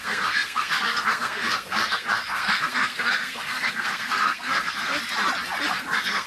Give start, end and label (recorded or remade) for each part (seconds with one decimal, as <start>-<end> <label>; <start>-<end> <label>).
0.0-4.9 remade; 4.9-5.7 recorded; 5.7-6.3 remade